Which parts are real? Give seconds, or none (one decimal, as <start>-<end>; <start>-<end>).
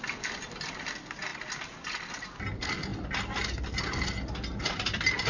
0.0-5.3